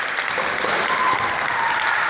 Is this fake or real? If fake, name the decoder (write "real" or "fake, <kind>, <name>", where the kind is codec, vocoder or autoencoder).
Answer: real